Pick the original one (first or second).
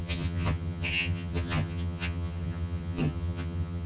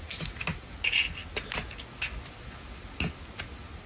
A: second